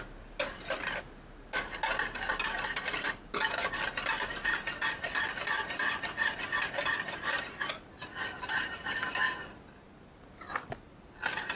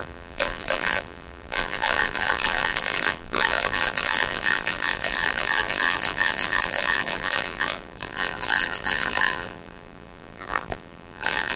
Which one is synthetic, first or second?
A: second